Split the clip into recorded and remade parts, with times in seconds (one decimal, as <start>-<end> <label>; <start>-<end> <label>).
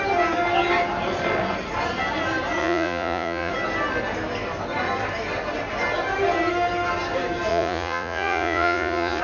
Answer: 0.0-2.6 recorded; 2.6-3.5 remade; 3.5-7.5 recorded; 7.5-9.2 remade